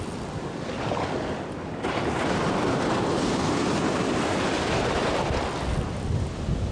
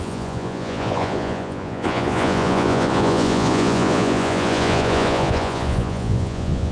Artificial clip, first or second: second